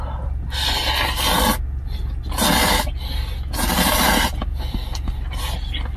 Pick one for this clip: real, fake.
real